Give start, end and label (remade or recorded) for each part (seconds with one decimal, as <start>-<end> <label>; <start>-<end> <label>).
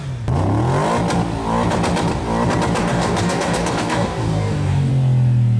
0.0-2.8 recorded; 2.8-4.9 remade; 4.9-5.6 recorded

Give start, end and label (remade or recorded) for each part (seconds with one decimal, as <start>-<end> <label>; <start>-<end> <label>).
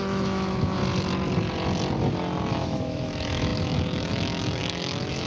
0.0-0.8 remade; 0.8-2.5 recorded; 2.5-5.3 remade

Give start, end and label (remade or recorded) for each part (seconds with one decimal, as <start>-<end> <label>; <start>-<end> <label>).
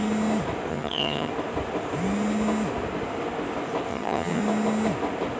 0.0-0.7 recorded; 0.7-1.3 remade; 1.3-3.9 recorded; 3.9-4.4 remade; 4.4-5.4 recorded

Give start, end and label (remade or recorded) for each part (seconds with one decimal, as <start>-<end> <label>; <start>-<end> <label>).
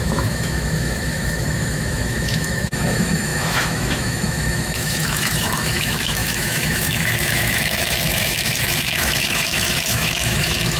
0.0-10.8 remade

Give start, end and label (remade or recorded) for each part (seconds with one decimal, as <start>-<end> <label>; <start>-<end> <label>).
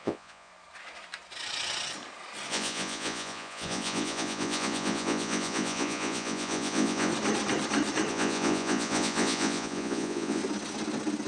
0.0-0.5 remade; 0.5-2.5 recorded; 2.5-7.1 remade; 7.1-8.1 recorded; 8.1-10.4 remade; 10.4-11.3 recorded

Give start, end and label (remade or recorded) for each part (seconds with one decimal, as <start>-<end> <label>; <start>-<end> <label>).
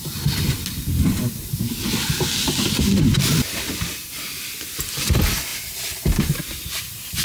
0.0-7.2 recorded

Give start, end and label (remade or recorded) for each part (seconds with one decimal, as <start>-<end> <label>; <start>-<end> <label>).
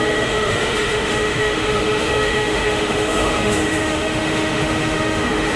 0.0-5.6 remade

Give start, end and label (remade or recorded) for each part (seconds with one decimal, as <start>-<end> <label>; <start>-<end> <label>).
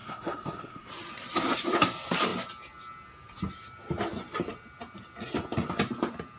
0.0-0.9 remade; 0.9-6.4 recorded